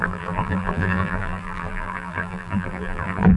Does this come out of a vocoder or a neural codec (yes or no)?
yes